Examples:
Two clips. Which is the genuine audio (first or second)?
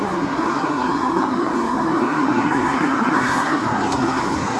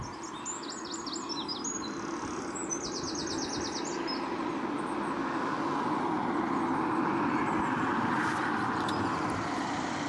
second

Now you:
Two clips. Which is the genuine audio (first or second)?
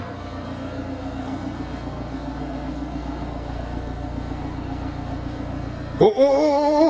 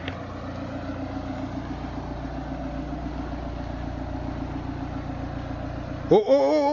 second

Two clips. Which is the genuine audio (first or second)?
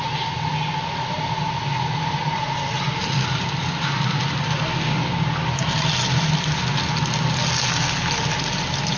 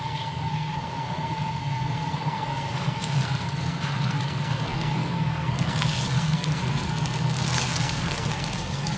first